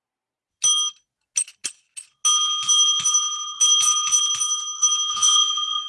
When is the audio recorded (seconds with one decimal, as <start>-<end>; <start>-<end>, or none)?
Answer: 0.0-5.1

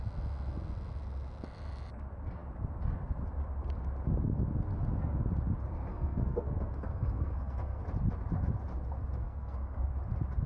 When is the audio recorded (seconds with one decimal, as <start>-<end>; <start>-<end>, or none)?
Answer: 0.0-5.9; 7.8-9.2; 9.9-10.5

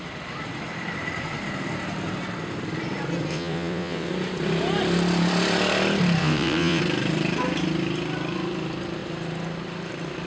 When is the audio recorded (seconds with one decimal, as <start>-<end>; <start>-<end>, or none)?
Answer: 0.0-3.3; 4.1-6.2; 6.8-10.3

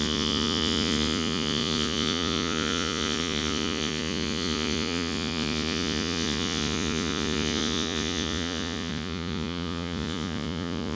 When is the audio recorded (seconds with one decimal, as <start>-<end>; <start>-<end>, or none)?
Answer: none

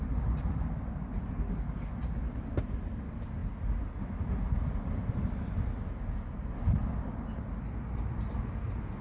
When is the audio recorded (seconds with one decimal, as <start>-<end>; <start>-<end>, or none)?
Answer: 0.0-9.0

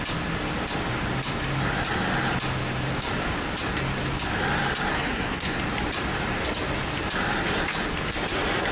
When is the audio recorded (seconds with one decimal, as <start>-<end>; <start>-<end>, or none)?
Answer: 0.0-4.9; 5.6-8.7

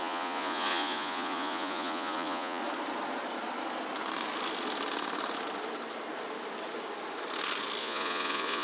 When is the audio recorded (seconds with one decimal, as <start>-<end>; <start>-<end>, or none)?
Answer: 2.6-7.8

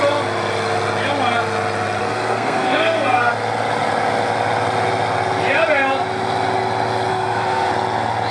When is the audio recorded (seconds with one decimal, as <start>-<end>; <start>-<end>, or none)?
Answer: 0.0-2.0; 3.3-7.1; 7.7-8.3